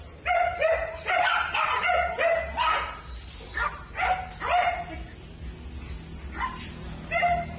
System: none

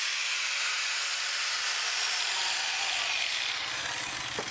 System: none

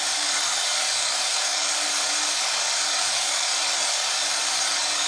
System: codec, DAC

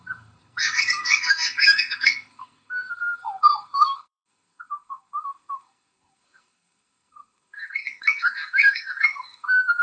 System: codec, SNAC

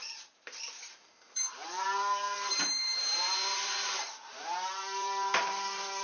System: vocoder, BigVGAN v2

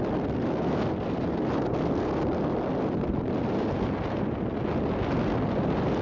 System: none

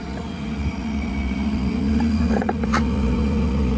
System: vocoder, Vocos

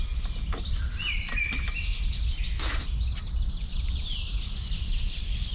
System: none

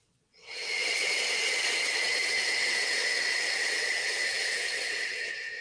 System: vocoder, WaveNeXt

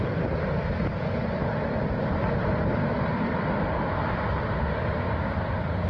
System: none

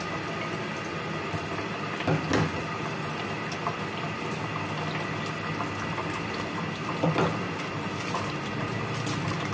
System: none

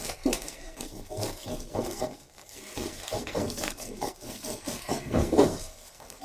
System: codec, SNAC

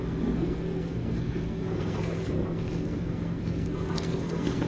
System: codec, SNAC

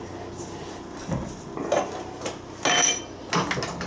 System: none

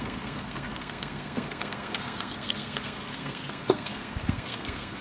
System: codec, SNAC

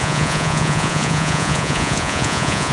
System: vocoder, Vocos